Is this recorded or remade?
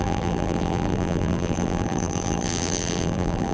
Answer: remade